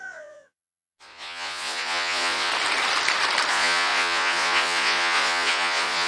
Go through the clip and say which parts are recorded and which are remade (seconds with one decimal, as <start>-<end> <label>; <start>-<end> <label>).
0.0-2.5 remade; 2.5-3.5 recorded; 3.5-6.1 remade